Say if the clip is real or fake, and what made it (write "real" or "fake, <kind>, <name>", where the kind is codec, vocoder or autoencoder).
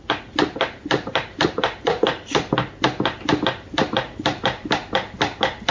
real